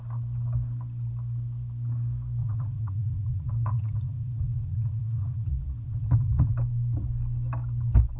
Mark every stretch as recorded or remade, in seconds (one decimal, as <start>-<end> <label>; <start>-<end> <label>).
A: 0.0-2.4 recorded; 2.4-6.5 remade; 6.5-8.2 recorded